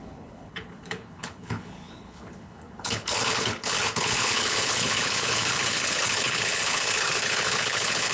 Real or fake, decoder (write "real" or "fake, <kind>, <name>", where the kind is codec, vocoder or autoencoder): fake, codec, HILCodec